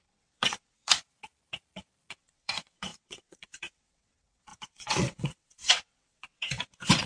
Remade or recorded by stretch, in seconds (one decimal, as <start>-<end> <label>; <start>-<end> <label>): 0.0-0.9 remade; 0.9-2.1 recorded; 2.1-7.1 remade